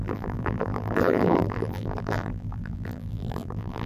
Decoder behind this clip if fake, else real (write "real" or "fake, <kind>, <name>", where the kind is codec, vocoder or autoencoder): fake, vocoder, BigVGAN v2